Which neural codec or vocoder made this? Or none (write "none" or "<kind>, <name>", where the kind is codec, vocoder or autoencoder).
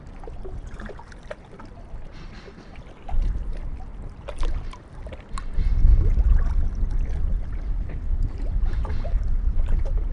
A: none